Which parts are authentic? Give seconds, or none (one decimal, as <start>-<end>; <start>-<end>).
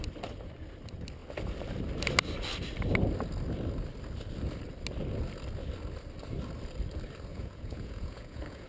0.0-7.3